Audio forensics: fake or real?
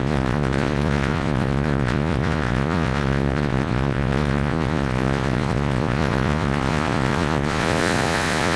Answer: fake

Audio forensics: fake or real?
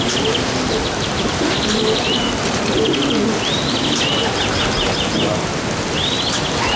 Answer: real